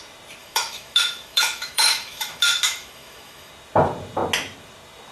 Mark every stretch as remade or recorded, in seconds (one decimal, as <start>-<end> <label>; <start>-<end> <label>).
0.0-0.4 recorded; 0.4-3.5 remade; 3.5-5.1 recorded